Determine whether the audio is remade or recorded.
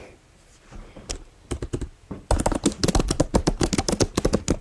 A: recorded